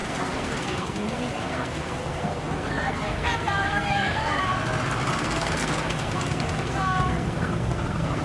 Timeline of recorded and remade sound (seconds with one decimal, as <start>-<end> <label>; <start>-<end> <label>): 0.0-4.4 remade; 4.4-5.1 recorded; 5.1-8.2 remade